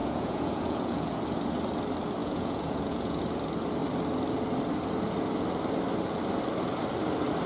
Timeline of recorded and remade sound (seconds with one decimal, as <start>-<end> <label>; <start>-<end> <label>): 0.0-1.2 remade; 1.2-2.2 recorded; 2.2-3.2 remade; 3.2-7.5 recorded